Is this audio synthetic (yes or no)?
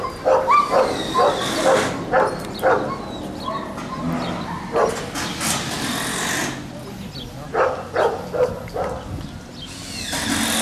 no